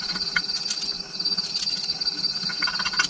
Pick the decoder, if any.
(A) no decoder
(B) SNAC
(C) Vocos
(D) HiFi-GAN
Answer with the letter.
A